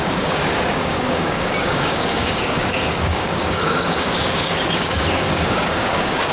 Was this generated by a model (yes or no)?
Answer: yes